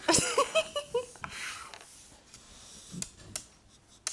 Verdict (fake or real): real